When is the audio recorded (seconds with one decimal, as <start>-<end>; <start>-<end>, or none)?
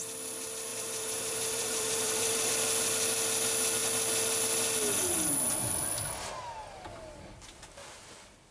0.0-0.7; 2.5-8.5